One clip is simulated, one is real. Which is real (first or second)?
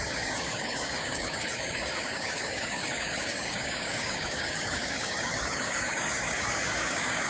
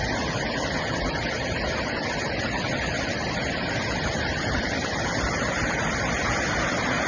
second